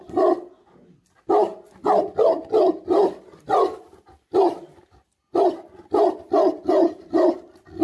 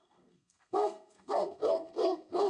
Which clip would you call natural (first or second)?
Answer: first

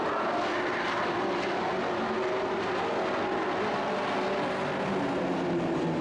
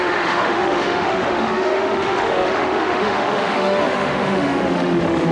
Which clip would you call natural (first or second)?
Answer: first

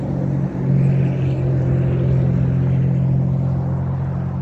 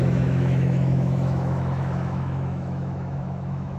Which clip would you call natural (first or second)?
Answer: first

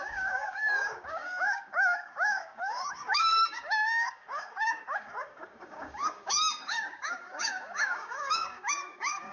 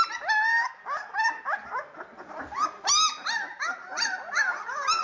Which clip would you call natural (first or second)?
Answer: second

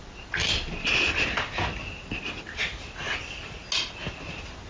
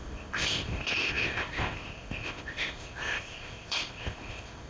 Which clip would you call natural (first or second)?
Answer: first